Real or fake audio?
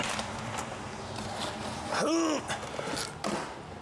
real